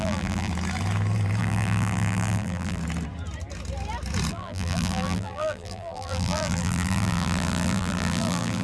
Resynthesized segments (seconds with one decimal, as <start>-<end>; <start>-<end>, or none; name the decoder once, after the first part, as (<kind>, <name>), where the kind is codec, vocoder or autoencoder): 0.0-0.5 (vocoder, BigVGAN v2); 1.4-2.8; 4.3-8.6